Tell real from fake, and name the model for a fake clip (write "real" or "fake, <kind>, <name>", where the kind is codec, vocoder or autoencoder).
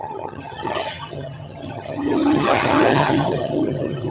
fake, vocoder, HiFi-GAN